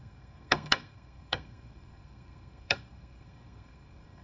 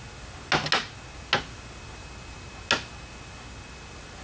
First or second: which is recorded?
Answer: second